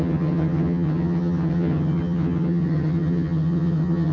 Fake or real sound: fake